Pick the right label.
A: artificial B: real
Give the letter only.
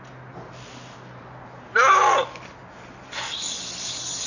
B